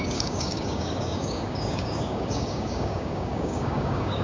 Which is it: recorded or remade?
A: remade